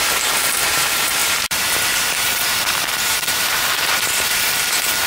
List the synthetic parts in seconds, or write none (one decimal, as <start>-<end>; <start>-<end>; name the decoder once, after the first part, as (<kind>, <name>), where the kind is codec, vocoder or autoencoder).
0.0-5.1 (vocoder, BigVGAN v2)